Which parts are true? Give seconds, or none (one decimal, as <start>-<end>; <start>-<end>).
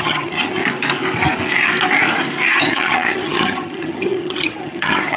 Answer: 0.6-2.6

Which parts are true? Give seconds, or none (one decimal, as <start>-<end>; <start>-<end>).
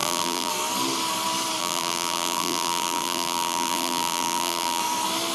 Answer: 0.5-1.6; 4.8-5.3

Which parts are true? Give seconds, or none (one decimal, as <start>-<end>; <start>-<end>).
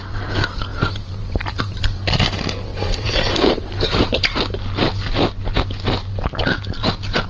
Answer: 0.0-0.7; 1.8-2.7; 4.4-7.3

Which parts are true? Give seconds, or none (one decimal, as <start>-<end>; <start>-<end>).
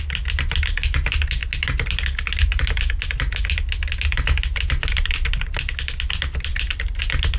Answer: 0.0-7.4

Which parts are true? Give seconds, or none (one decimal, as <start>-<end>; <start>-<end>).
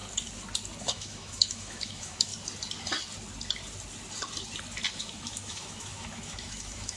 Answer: 0.0-0.8; 2.3-4.9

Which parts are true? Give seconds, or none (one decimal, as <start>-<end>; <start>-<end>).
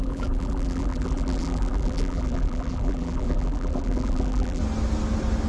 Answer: 4.6-5.5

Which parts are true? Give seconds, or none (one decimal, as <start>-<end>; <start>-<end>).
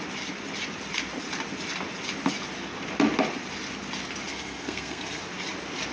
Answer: 0.0-4.3; 5.2-5.9